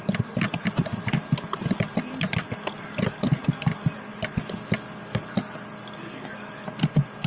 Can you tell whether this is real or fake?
real